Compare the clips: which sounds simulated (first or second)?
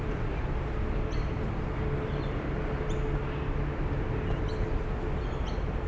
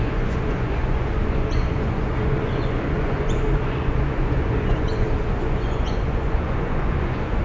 second